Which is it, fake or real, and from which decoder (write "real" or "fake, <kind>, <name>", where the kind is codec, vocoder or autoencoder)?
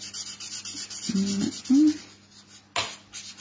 real